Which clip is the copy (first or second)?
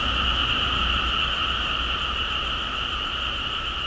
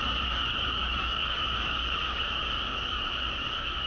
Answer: second